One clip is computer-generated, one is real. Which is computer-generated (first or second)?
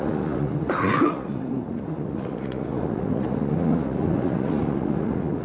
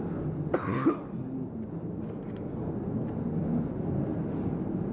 first